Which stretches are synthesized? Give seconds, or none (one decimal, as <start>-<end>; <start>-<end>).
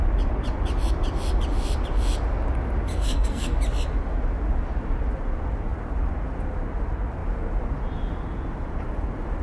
2.9-3.6